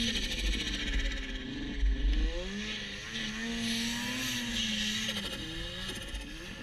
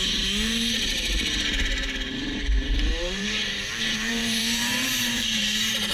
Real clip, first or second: first